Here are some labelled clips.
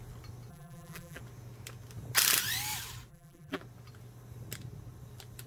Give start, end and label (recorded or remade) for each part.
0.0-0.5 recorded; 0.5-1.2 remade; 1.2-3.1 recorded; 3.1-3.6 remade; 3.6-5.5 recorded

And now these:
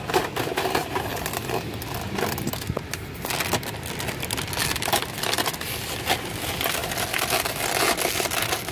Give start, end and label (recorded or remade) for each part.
0.0-8.7 recorded

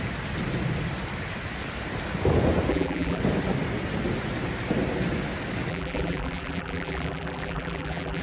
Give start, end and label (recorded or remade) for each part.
0.0-2.7 recorded; 2.7-3.2 remade; 3.2-5.7 recorded; 5.7-8.2 remade

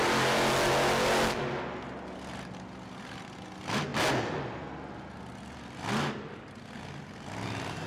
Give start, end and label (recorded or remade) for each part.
0.0-7.9 recorded

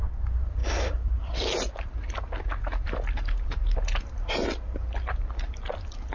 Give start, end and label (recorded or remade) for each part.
0.0-0.6 recorded; 0.6-4.3 remade; 4.3-6.1 recorded

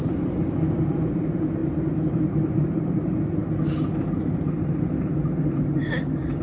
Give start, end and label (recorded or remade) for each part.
0.0-3.4 remade; 3.4-4.1 recorded; 4.1-6.4 remade

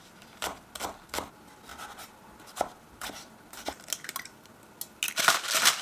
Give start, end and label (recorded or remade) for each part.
0.0-5.8 recorded

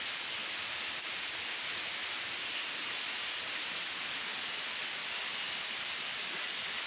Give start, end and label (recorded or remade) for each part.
0.0-2.0 recorded; 2.0-4.5 remade; 4.5-6.9 recorded